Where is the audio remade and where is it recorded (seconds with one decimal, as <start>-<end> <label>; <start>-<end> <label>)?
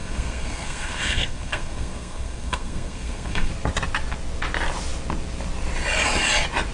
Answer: 0.0-3.5 remade; 3.5-6.7 recorded